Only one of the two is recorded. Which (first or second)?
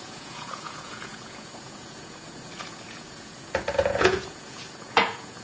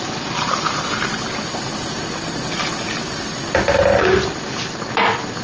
second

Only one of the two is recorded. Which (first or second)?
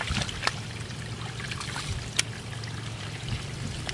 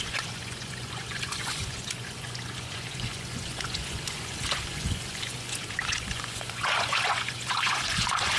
first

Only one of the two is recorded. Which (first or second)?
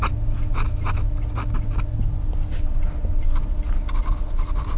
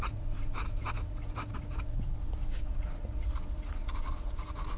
first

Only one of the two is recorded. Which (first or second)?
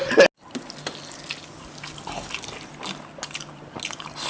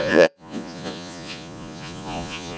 first